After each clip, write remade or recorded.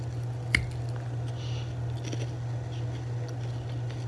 recorded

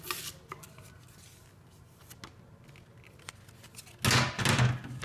recorded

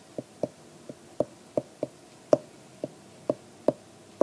remade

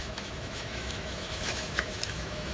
remade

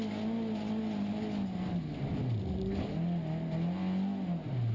recorded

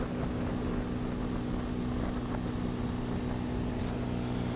recorded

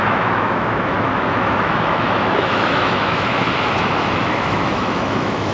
remade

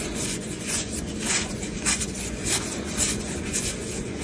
remade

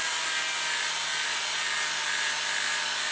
recorded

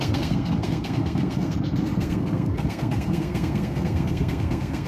remade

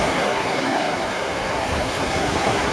remade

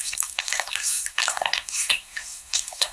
remade